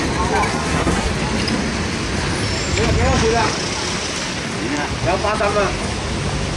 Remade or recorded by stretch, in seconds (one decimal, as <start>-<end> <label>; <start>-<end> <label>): 0.0-0.5 recorded; 0.5-1.1 remade; 1.1-6.6 recorded